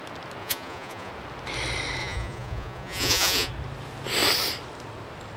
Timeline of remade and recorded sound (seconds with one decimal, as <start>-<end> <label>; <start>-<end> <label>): 0.0-0.4 recorded; 0.4-1.1 remade; 1.1-2.0 recorded; 2.0-3.5 remade; 3.5-5.4 recorded